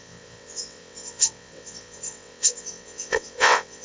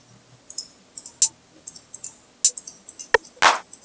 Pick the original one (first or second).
second